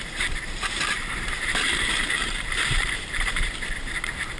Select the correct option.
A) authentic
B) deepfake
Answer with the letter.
B